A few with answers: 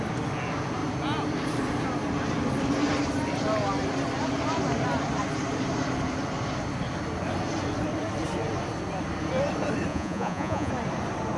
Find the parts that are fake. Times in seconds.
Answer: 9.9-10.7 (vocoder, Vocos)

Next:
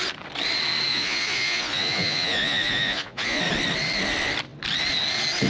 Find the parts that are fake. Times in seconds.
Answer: 0.9-3.4 (vocoder, Vocos)